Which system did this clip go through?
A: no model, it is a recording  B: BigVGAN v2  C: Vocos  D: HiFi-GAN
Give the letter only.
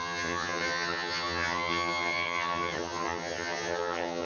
D